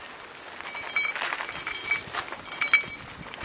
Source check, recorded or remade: recorded